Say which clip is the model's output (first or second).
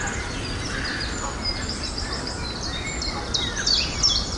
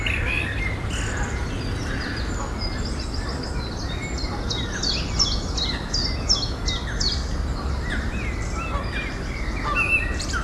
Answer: first